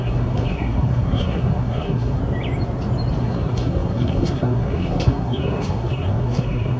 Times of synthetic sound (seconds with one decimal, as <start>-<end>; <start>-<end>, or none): 0.0-2.2; 3.2-6.8